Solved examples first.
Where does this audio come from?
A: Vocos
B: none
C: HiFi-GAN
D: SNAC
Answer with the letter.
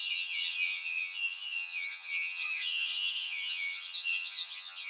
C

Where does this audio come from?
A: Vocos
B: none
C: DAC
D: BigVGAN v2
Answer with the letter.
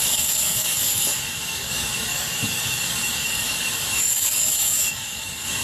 C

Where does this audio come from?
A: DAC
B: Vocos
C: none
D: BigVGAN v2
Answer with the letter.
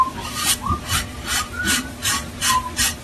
D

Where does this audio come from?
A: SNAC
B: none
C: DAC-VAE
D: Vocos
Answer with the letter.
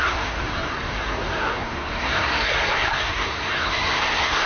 A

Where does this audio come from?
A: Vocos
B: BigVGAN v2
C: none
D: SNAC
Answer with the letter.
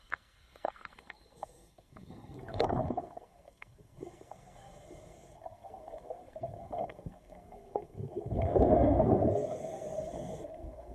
D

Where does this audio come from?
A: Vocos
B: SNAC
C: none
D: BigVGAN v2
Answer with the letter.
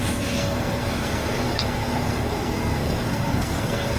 B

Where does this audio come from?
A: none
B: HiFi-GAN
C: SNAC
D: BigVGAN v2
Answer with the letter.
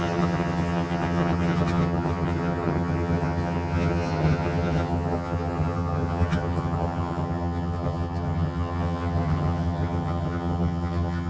B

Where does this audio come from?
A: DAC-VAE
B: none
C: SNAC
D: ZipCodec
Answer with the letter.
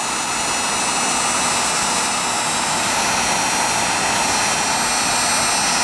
B